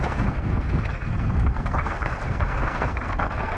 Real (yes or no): no